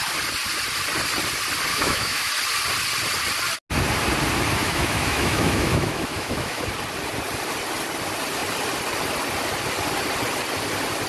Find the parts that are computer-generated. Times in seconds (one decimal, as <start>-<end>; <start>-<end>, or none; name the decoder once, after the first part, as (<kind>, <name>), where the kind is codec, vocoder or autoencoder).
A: 1.7-2.3 (autoencoder, DAC-VAE); 4.6-6.6